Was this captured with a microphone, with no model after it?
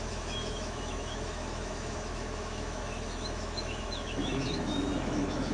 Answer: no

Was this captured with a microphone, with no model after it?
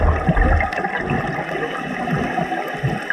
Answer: yes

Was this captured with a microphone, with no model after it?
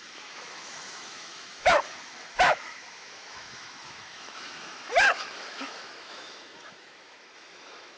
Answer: no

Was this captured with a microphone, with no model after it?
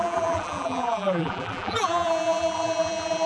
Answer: no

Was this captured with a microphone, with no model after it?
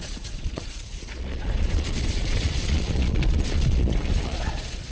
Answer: no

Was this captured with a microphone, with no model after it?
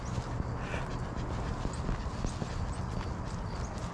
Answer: yes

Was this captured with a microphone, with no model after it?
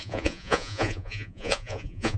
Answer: no